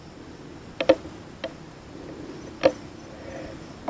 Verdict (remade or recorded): recorded